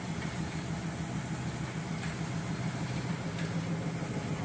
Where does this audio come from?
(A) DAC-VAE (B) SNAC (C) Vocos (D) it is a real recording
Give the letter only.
D